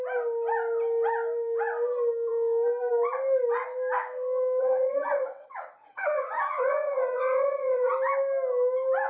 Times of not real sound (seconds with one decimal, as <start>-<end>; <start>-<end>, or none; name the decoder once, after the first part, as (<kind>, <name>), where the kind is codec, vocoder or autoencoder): 4.6-7.9 (vocoder, WaveNeXt)